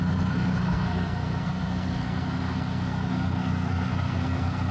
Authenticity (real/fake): fake